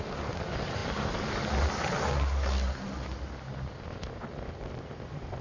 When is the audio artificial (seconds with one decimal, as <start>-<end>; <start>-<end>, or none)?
none